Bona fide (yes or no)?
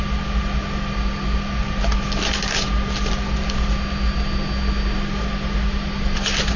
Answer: yes